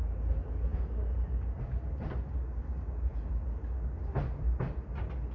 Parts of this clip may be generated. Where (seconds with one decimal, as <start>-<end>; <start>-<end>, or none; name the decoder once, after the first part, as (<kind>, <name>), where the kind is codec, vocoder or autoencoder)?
none